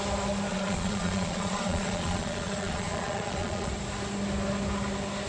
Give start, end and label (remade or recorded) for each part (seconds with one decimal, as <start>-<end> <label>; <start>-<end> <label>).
0.0-0.5 recorded; 0.5-3.7 remade; 3.7-5.3 recorded